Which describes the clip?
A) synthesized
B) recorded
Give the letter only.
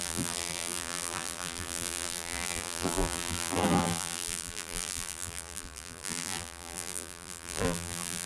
A